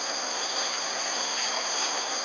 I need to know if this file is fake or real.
fake